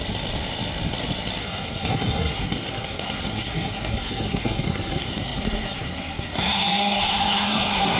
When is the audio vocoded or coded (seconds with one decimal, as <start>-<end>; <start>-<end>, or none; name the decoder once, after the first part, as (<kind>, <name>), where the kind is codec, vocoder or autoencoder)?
1.4-8.0 (codec, SNAC)